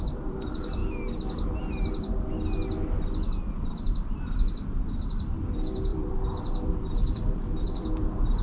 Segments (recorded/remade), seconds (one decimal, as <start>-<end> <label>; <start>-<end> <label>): 0.0-0.8 remade; 0.8-4.8 recorded; 4.8-8.4 remade